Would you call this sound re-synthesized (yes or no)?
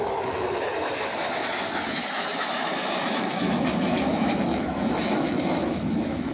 yes